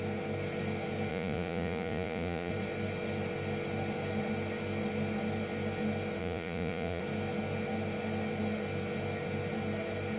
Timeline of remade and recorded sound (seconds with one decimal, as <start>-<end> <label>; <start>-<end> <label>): 0.0-1.1 recorded; 1.1-2.5 remade; 2.5-6.2 recorded; 6.2-7.0 remade; 7.0-10.2 recorded

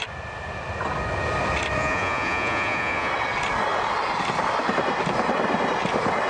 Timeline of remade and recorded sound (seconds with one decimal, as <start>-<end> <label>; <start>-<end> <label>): 0.0-1.8 recorded; 1.8-3.1 remade; 3.1-6.3 recorded

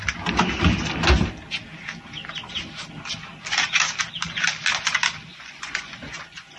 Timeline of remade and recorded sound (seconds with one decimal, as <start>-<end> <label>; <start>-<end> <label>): 0.0-5.3 recorded; 5.3-6.6 remade

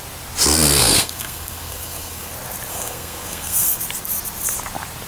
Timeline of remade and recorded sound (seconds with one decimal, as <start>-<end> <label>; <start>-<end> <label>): 0.0-0.8 recorded; 0.8-2.3 remade; 2.3-2.7 recorded; 2.7-3.8 remade; 3.8-5.1 recorded